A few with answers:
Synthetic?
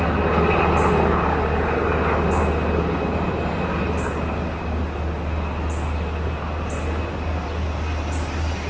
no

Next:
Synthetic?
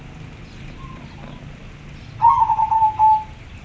no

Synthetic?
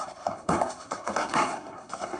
yes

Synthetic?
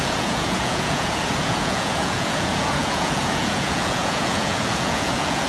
yes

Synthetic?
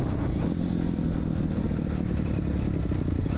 no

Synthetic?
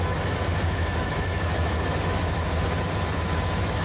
yes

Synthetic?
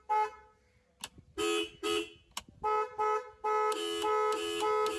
no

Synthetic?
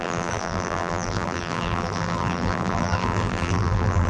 yes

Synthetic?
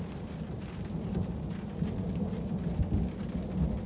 no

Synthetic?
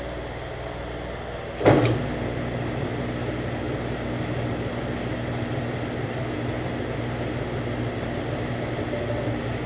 no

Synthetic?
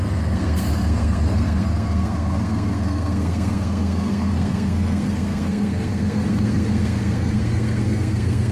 yes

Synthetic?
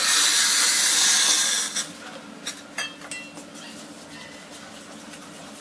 no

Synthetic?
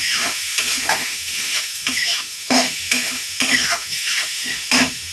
yes